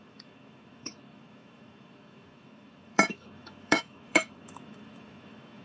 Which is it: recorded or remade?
remade